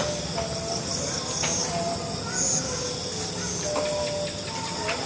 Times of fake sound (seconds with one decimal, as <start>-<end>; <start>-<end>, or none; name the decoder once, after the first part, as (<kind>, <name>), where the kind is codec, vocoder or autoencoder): none